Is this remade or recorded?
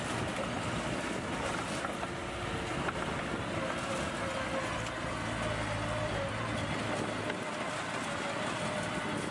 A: recorded